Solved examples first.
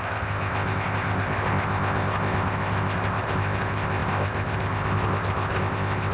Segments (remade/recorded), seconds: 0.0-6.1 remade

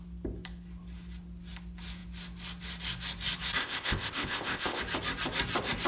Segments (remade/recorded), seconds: 0.0-3.6 recorded; 3.6-4.8 remade; 4.8-5.9 recorded